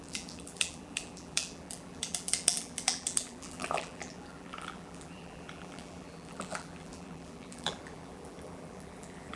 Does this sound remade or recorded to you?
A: remade